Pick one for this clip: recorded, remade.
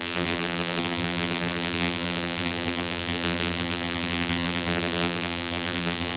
remade